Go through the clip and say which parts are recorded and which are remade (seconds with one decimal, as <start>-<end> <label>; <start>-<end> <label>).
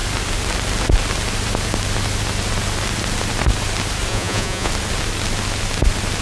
0.0-4.1 recorded; 4.1-4.7 remade; 4.7-6.2 recorded